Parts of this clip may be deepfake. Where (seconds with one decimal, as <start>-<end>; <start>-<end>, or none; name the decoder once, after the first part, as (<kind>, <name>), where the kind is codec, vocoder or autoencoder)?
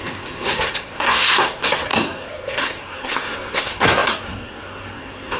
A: 0.0-5.4 (codec, SNAC)